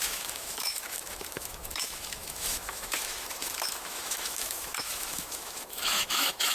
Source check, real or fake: fake